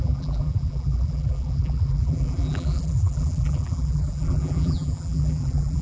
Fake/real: fake